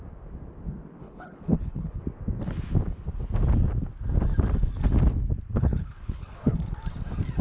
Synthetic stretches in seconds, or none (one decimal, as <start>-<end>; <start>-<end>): 1.0-2.0; 5.5-6.8